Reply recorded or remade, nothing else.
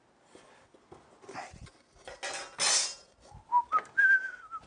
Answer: recorded